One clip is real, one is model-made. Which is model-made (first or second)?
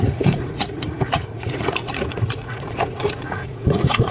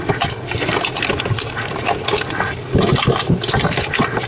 first